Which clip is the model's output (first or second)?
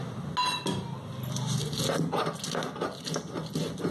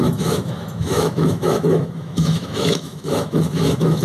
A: second